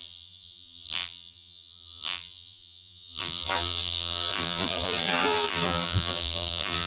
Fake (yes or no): yes